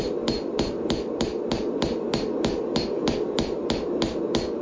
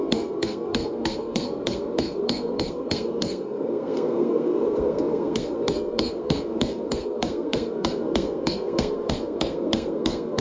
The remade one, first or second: second